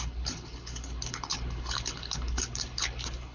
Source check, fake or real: fake